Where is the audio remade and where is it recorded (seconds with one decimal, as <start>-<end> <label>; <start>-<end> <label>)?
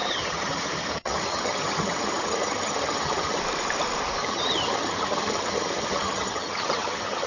0.0-3.4 remade; 3.4-4.2 recorded; 4.2-7.3 remade